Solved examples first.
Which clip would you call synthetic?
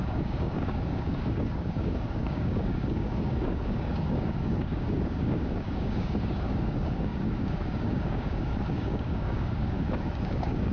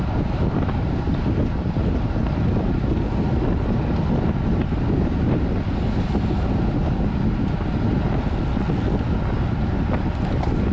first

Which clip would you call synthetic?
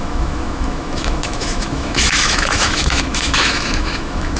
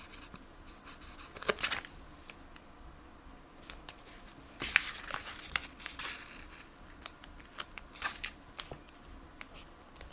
first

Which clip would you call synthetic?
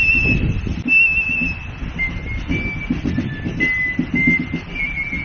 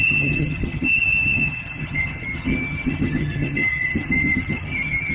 second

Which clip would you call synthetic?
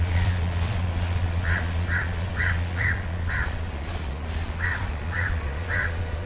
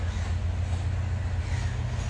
first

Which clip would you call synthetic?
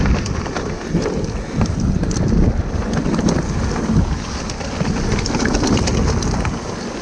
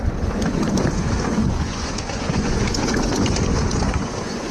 second